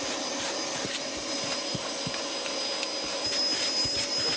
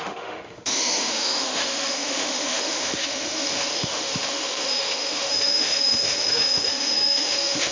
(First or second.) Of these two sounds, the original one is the first